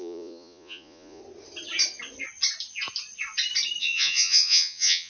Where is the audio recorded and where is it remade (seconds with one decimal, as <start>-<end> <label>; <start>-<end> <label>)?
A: 0.0-1.2 remade; 1.2-3.8 recorded; 3.8-5.1 remade